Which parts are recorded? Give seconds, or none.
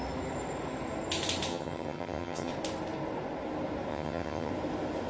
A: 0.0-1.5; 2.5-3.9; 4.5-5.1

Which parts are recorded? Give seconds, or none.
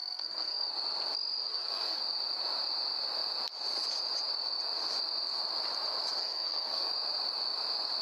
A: 0.7-1.5; 2.0-6.2; 6.9-8.0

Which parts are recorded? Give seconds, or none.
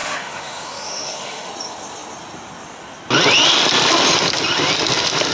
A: 1.5-5.3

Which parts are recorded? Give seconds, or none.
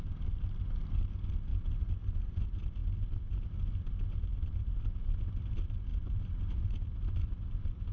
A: 0.0-5.9; 6.7-7.9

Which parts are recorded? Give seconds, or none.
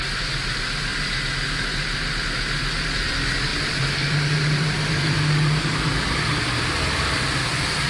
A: 0.0-3.5